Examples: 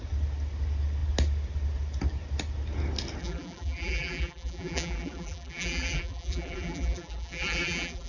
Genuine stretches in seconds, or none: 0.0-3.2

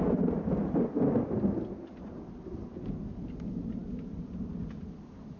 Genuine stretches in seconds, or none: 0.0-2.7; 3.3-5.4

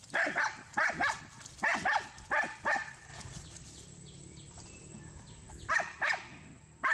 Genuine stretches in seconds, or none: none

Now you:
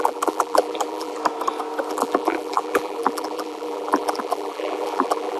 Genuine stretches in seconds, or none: 1.2-1.9

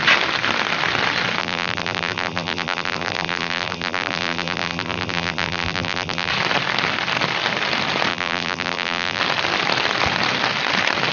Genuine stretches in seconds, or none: 0.0-1.4; 6.3-8.1; 9.2-11.1

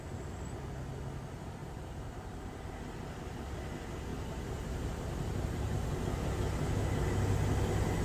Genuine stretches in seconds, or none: 0.0-1.6; 2.8-4.1; 6.0-8.0